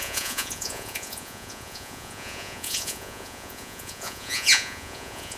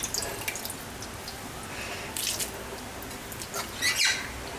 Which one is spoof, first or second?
first